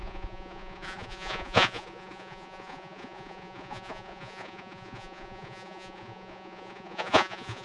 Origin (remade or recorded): remade